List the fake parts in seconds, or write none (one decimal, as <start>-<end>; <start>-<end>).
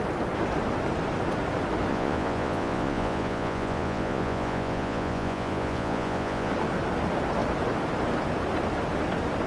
1.9-6.5